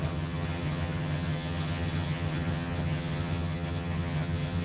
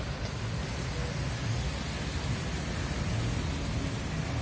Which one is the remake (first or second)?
first